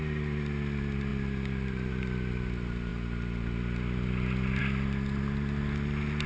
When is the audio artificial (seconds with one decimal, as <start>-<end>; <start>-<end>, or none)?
none